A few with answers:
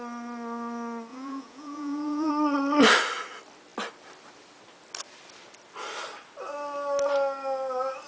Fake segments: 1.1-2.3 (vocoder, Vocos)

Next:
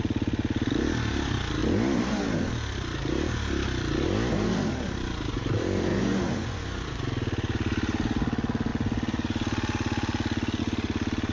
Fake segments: 5.9-7.0 (vocoder, Vocos)

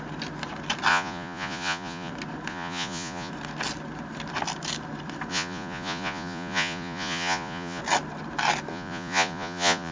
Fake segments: 0.9-2.1 (vocoder, Vocos); 2.5-3.3; 5.3-7.8; 8.7-9.9

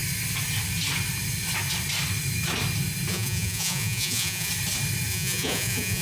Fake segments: 3.1-4.5 (vocoder, Vocos); 5.1-6.0

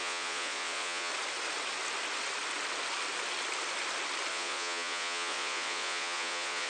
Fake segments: 0.0-1.1 (vocoder, Vocos); 4.3-6.7